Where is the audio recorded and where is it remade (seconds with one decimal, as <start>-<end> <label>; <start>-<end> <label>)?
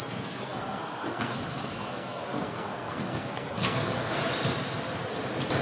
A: 0.0-4.2 remade; 4.2-5.6 recorded